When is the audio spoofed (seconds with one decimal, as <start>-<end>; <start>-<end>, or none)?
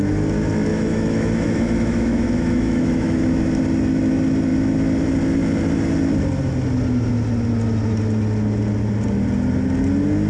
0.7-3.2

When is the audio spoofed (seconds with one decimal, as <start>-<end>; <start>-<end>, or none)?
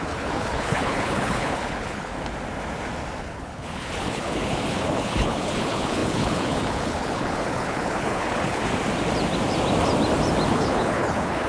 0.0-2.1; 3.2-8.6; 10.5-11.5